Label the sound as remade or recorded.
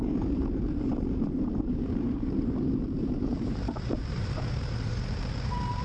remade